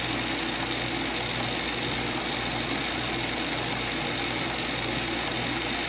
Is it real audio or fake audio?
real